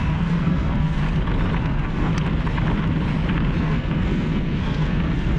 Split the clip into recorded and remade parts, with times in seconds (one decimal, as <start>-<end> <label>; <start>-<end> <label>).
0.0-1.0 remade; 1.0-1.6 recorded; 1.6-2.1 remade; 2.1-3.6 recorded; 3.6-5.4 remade

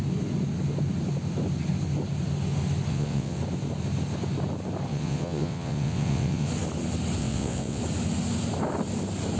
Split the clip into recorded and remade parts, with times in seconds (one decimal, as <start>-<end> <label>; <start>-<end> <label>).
0.0-2.9 recorded; 2.9-3.4 remade; 3.4-4.9 recorded; 4.9-6.5 remade; 6.5-7.2 recorded; 7.2-7.8 remade; 7.8-9.4 recorded

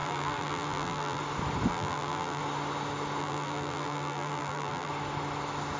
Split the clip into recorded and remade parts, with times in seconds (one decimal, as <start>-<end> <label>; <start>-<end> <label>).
0.0-1.2 remade; 1.2-1.7 recorded; 1.7-2.4 remade; 2.4-3.2 recorded; 3.2-4.9 remade; 4.9-5.8 recorded

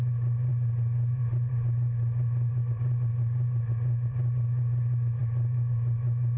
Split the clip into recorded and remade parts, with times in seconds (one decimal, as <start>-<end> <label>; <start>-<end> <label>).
0.0-6.4 recorded

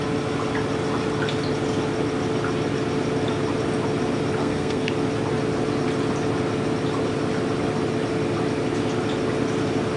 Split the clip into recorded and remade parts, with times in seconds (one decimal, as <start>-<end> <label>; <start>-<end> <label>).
0.0-4.4 recorded; 4.4-4.9 remade; 4.9-10.0 recorded

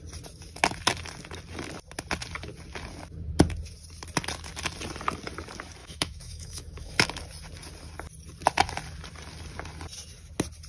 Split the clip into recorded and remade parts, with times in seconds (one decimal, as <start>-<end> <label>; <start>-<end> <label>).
0.0-5.8 recorded; 5.8-7.1 remade; 7.1-10.7 recorded

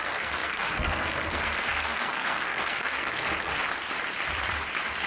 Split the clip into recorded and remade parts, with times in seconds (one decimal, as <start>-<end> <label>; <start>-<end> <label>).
0.0-3.5 remade; 3.5-5.1 recorded